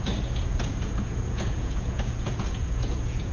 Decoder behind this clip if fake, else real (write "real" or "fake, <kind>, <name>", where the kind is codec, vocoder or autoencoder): fake, vocoder, Vocos